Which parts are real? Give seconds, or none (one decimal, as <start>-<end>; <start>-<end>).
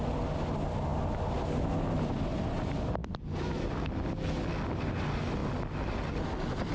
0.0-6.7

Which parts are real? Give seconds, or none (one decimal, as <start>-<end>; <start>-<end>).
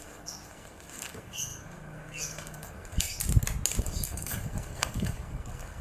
3.2-3.8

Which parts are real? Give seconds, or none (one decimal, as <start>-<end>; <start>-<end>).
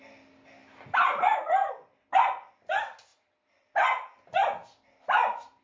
0.0-5.6